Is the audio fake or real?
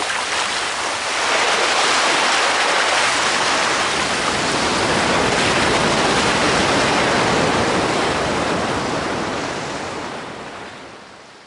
real